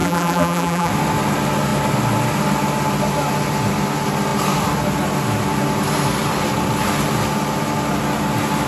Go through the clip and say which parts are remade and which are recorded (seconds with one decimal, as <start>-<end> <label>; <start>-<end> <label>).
0.0-0.9 remade; 0.9-8.7 recorded